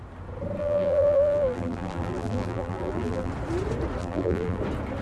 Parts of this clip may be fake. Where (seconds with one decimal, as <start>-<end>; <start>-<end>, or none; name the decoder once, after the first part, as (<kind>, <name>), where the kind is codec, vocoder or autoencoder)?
0.6-3.3 (vocoder, BigVGAN v2); 4.0-4.6